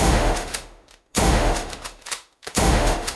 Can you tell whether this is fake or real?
fake